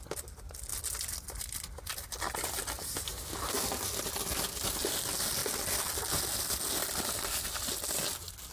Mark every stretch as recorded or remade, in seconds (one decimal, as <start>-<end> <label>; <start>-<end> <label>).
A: 0.0-8.5 recorded